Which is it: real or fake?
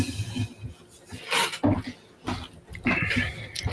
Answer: real